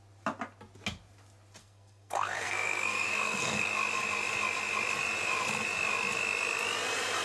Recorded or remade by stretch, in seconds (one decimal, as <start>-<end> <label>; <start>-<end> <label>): 0.0-1.6 recorded; 1.6-3.7 remade; 3.7-7.2 recorded